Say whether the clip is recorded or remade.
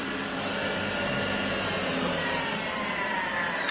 recorded